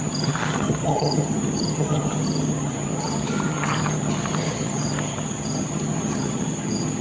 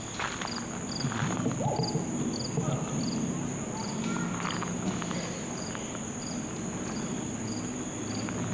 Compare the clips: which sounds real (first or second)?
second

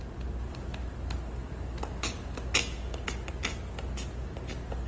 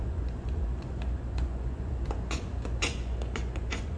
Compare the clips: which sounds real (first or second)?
first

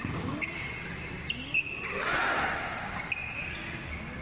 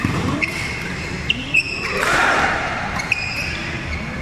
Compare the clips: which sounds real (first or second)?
first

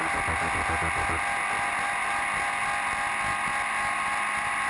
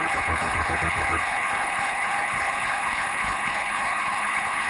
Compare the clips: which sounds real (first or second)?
first